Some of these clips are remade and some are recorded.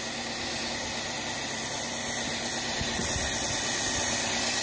recorded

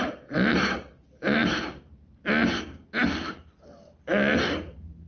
recorded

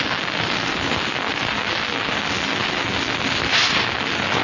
recorded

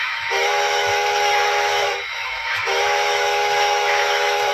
remade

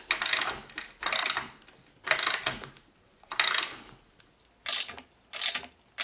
recorded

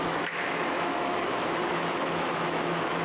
remade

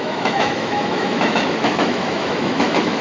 remade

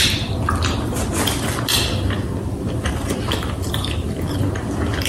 recorded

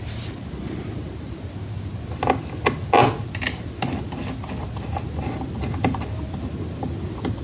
recorded